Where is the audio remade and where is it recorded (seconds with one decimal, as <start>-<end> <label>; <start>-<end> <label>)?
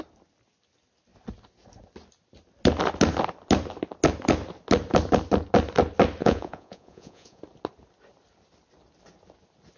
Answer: 0.0-6.2 recorded; 6.2-7.4 remade; 7.4-9.8 recorded